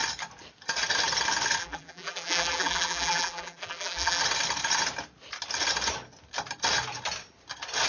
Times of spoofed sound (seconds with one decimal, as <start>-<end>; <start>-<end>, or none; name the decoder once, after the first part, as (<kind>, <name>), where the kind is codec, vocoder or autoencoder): 1.6-4.2 (vocoder, BigVGAN v2)